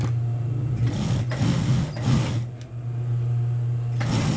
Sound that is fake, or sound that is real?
real